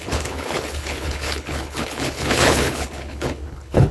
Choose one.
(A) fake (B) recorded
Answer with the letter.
A